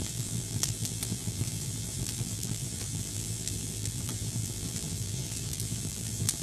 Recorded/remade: remade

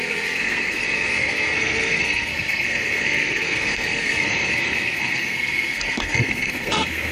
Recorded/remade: remade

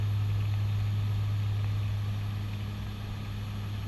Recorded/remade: recorded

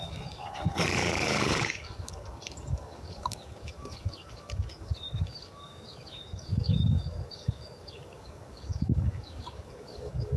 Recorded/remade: remade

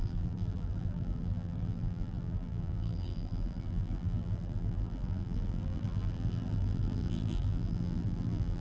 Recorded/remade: remade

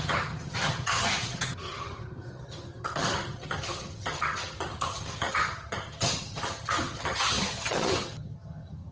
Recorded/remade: remade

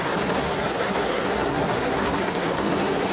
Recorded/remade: remade